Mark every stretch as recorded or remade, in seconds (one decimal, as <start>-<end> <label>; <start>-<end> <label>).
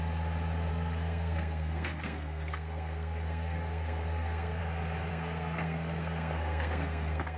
0.0-0.7 recorded; 0.7-4.6 remade; 4.6-5.1 recorded; 5.1-7.4 remade